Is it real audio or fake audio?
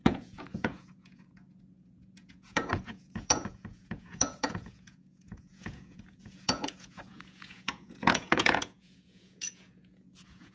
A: fake